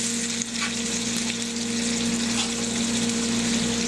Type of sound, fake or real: real